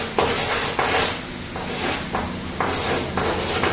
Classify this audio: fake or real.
real